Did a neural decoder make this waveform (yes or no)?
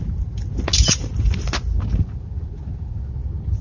no